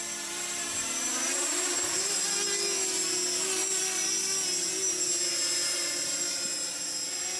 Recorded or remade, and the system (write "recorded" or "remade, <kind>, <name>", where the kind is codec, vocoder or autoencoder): recorded